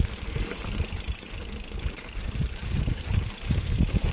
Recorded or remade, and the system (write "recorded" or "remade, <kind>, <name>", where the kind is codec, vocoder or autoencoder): remade, vocoder, BigVGAN v2